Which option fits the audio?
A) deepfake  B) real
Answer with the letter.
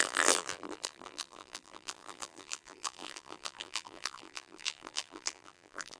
A